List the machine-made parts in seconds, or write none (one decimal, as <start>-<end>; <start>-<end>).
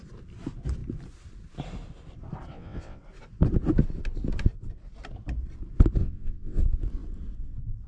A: 2.5-3.0; 6.0-6.6